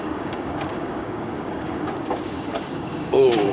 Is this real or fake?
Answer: fake